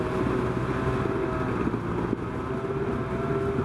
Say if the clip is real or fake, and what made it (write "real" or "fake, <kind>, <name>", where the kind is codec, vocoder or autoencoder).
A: real